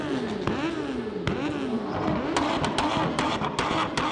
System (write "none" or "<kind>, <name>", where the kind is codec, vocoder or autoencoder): none